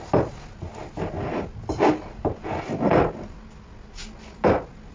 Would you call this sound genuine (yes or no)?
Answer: yes